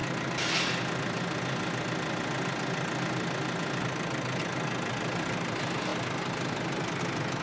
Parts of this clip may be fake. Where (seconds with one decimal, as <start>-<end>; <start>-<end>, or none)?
none

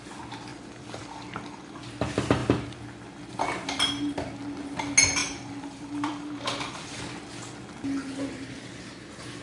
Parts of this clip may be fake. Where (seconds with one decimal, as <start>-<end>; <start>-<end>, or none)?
0.5-1.8; 5.2-7.0

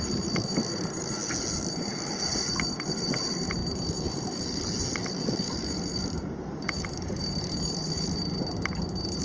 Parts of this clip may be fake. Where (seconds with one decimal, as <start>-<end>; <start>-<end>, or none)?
none